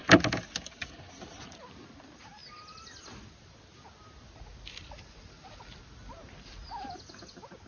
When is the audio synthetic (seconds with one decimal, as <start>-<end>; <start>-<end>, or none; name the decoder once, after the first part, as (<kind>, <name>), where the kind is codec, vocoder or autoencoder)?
none